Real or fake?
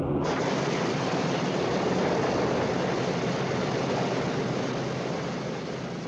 real